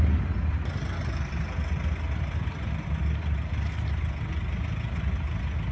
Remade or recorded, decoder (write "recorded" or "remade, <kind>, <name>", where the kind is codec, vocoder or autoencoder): recorded